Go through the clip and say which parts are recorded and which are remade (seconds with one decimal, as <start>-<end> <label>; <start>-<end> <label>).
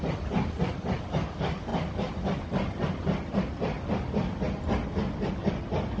0.0-6.0 recorded